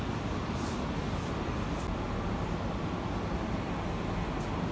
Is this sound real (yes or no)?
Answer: yes